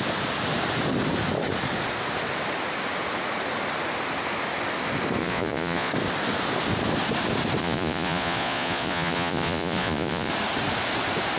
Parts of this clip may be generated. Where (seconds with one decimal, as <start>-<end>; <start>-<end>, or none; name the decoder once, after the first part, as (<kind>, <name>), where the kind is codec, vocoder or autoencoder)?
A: 5.2-5.9 (vocoder, Vocos); 7.6-10.3